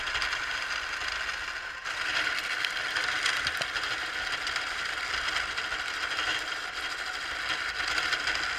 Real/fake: real